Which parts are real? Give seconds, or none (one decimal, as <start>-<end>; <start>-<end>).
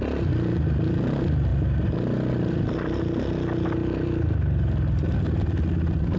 0.0-6.2